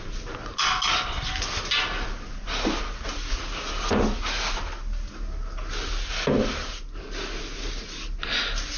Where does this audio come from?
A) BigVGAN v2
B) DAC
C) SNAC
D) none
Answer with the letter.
D